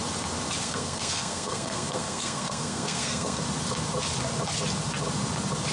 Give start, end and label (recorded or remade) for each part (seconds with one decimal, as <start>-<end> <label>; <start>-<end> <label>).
0.0-0.6 recorded; 0.6-3.4 remade; 3.4-5.7 recorded